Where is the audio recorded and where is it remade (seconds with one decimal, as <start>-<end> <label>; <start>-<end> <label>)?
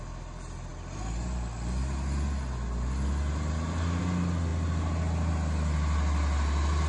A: 0.0-6.9 recorded